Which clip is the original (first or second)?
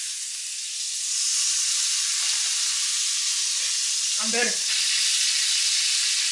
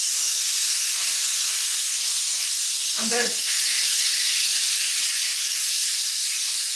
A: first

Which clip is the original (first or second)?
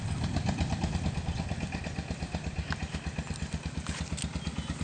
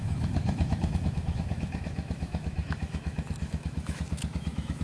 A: first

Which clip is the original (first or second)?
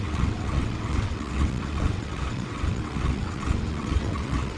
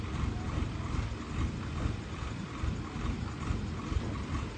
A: second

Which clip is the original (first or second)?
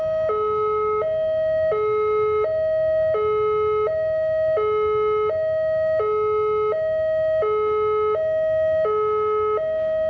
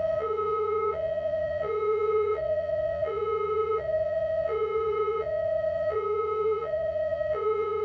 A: first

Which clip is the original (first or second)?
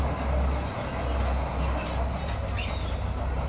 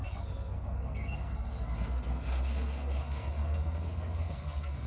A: first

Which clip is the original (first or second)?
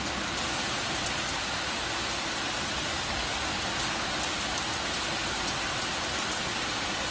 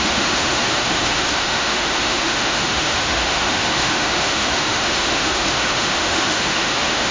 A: first